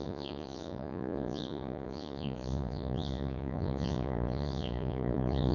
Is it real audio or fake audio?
fake